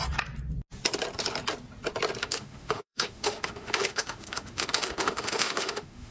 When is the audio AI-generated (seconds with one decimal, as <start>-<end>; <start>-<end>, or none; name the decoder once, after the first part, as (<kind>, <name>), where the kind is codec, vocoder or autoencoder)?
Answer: 2.2-6.1 (autoencoder, DAC-VAE)